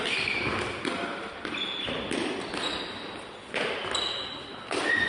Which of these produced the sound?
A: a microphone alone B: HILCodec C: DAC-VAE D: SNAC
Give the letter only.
A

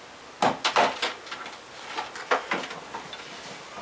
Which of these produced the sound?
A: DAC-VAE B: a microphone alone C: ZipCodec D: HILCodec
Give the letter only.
B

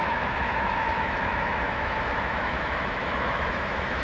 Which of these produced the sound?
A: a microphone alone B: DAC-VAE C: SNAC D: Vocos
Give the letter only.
B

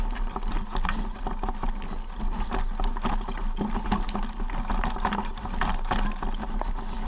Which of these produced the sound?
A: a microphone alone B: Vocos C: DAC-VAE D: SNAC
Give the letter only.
A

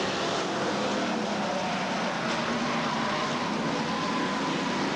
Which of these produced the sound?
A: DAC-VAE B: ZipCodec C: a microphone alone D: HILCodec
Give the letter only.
C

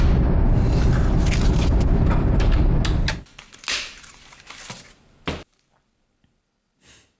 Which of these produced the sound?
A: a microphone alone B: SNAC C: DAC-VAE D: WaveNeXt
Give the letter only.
A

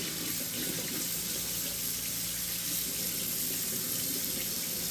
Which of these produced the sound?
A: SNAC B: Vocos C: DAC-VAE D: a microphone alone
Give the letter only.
D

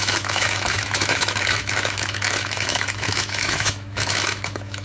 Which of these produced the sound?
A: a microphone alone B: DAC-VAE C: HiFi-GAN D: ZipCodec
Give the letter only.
B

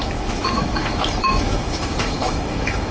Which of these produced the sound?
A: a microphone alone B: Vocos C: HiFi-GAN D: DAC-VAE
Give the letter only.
D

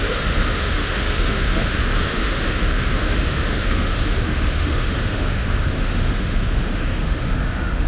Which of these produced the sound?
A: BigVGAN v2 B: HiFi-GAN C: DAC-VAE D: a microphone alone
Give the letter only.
C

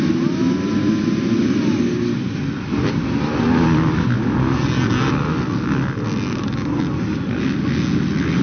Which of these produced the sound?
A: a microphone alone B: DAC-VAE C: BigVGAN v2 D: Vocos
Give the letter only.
A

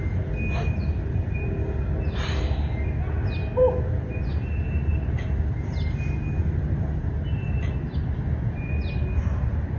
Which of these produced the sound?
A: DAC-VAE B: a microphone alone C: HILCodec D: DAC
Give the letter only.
B